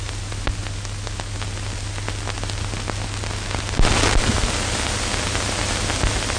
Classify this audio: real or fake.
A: real